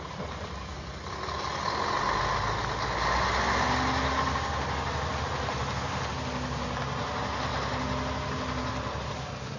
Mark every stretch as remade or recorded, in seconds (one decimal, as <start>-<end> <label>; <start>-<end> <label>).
0.0-0.7 recorded; 0.7-1.2 remade; 1.2-9.6 recorded